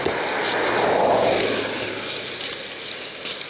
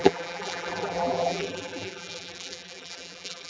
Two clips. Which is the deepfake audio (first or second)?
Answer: second